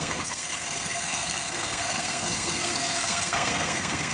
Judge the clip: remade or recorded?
remade